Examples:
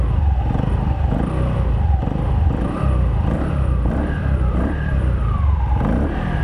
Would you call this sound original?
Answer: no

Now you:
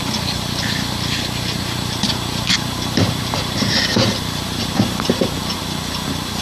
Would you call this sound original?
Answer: no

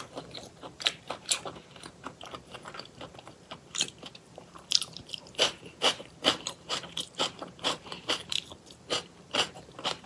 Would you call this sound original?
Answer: no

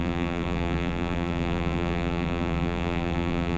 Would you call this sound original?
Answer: no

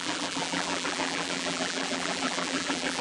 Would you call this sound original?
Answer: no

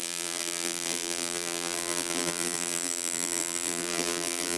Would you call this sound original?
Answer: no